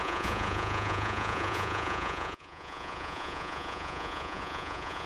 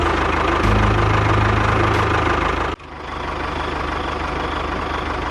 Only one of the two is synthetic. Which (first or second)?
first